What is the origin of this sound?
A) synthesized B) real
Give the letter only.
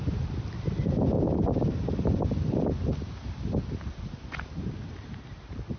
B